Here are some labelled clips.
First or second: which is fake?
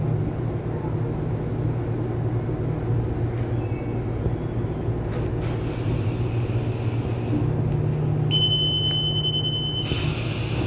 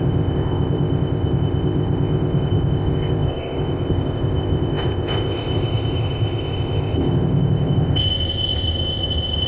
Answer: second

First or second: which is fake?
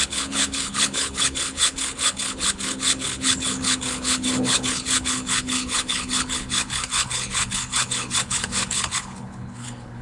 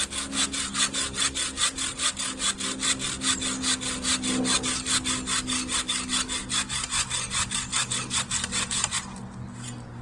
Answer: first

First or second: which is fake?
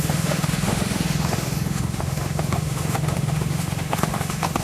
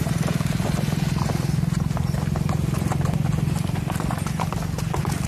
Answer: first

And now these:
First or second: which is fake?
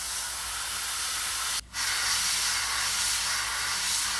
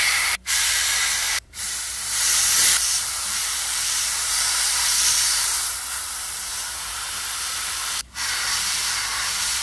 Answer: second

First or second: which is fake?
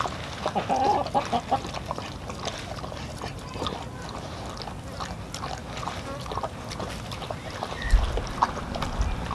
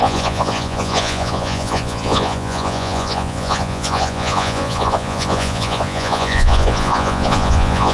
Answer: second